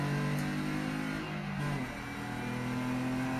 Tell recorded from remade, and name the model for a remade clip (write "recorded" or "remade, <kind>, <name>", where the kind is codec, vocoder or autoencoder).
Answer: recorded